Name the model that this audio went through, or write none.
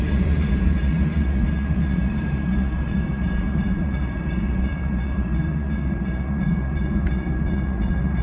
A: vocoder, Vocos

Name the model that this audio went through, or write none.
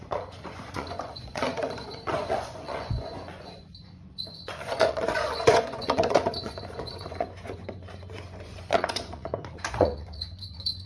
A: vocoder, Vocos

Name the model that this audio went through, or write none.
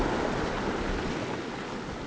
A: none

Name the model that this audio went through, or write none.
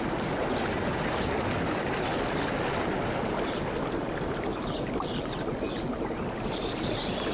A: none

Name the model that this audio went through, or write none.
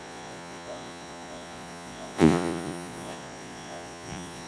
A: vocoder, Vocos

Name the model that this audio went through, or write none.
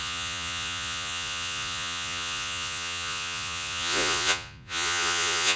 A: vocoder, Vocos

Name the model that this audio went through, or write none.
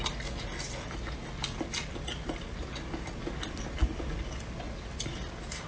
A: none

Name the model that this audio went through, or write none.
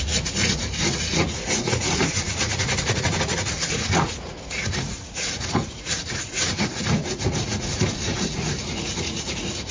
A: vocoder, Vocos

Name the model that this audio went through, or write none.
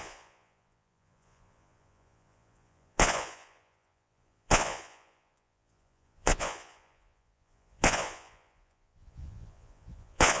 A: vocoder, Vocos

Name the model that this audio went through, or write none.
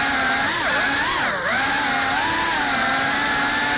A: none